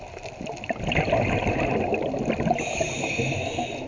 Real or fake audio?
real